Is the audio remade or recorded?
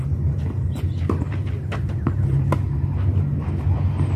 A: recorded